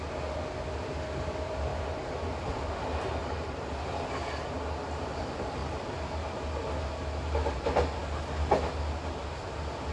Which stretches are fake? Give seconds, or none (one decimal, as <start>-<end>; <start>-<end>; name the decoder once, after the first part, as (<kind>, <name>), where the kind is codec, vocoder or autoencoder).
3.2-4.1 (vocoder, BigVGAN v2)